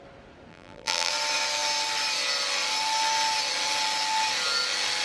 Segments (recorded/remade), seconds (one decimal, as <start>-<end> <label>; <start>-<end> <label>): 0.0-0.5 recorded; 0.5-1.1 remade; 1.1-5.0 recorded